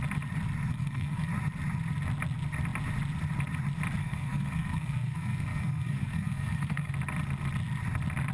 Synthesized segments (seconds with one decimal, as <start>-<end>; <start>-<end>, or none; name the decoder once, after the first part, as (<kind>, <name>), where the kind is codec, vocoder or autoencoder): 0.7-1.3 (codec, SNAC); 4.0-6.9